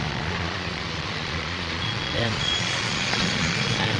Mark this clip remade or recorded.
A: remade